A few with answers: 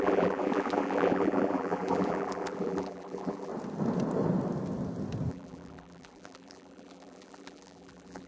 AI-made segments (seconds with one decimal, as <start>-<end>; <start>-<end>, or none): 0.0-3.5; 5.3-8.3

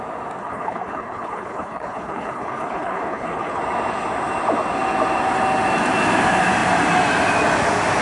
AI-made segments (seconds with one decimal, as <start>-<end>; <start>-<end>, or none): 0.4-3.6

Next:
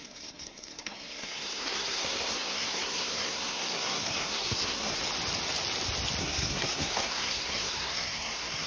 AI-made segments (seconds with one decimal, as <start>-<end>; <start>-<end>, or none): 0.0-5.0; 6.2-8.7